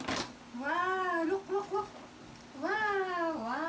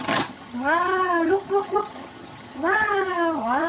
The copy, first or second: second